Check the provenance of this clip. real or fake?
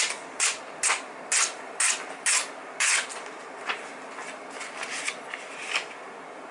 real